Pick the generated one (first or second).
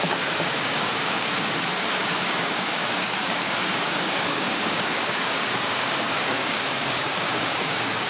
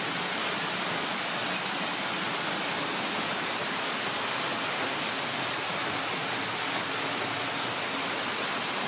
first